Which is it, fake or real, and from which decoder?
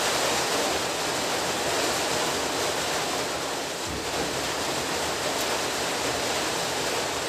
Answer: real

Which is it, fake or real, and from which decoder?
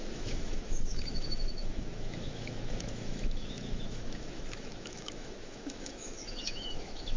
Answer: fake, autoencoder, DAC-VAE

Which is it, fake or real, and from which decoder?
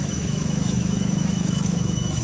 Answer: fake, autoencoder, DAC-VAE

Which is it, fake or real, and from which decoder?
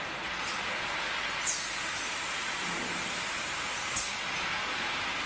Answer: real